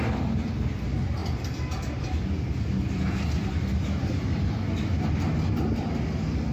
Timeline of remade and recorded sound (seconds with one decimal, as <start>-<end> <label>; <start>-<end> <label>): 0.0-6.5 recorded

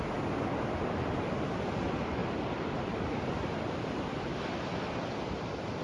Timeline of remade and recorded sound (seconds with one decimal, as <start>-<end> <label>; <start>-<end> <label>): 0.0-2.2 recorded; 2.2-5.8 remade

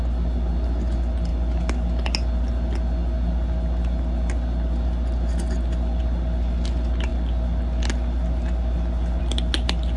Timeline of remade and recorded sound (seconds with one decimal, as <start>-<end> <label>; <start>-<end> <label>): 0.0-10.0 recorded

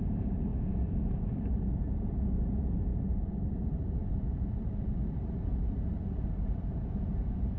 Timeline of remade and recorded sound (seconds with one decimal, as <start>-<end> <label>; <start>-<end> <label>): 0.0-0.5 remade; 0.5-1.1 recorded; 1.1-7.6 remade